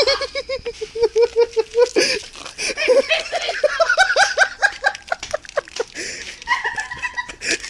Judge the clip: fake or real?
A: real